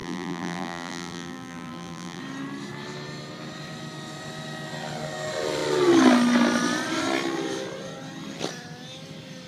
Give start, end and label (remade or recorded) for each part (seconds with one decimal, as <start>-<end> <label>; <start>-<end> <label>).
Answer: 0.0-2.2 remade; 2.2-9.5 recorded